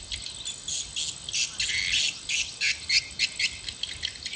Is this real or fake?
real